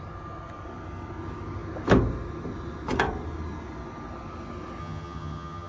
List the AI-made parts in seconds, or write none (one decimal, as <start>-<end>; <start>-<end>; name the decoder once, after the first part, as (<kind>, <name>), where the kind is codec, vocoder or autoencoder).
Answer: 4.8-5.7 (vocoder, HiFi-GAN)